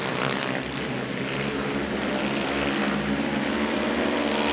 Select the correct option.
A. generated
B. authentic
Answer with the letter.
B